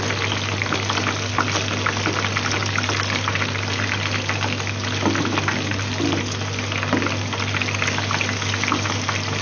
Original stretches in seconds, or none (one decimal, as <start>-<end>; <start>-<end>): 0.0-9.4